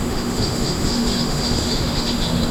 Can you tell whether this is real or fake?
fake